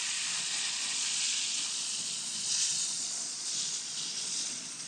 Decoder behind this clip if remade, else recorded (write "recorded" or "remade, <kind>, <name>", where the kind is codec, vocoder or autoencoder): remade, vocoder, Vocos